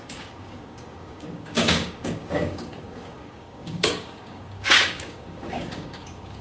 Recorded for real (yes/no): no